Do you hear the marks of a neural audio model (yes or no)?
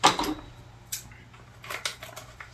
no